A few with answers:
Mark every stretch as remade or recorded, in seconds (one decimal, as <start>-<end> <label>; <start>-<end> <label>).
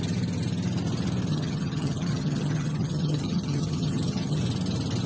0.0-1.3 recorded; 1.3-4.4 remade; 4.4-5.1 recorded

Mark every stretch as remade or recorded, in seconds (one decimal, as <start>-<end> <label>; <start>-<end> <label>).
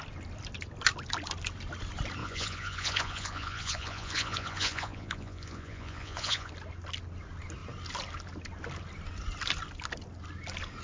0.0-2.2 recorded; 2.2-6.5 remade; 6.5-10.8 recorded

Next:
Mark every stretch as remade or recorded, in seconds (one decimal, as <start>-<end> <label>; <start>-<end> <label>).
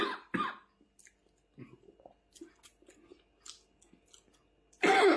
0.0-5.2 recorded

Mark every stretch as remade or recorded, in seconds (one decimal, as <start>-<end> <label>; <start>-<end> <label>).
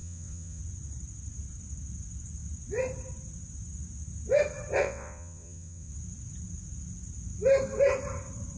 0.0-0.6 remade; 0.6-4.8 recorded; 4.8-5.9 remade; 5.9-8.6 recorded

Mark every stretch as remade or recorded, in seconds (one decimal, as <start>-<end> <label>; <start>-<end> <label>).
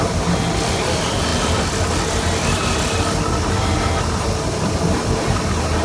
0.0-5.8 recorded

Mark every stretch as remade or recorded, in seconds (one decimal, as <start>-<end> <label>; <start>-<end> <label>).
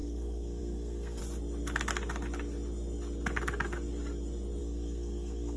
0.0-1.2 remade; 1.2-4.6 recorded; 4.6-5.6 remade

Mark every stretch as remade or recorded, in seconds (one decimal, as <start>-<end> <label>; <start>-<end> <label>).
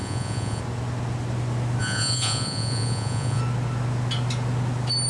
0.0-0.6 remade; 0.6-1.8 recorded; 1.8-3.4 remade; 3.4-5.1 recorded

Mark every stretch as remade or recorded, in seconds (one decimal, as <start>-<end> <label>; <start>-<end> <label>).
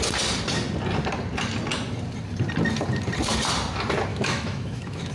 0.0-4.1 recorded; 4.1-5.1 remade